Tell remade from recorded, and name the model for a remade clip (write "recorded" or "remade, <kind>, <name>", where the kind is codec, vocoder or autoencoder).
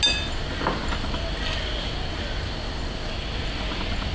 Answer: recorded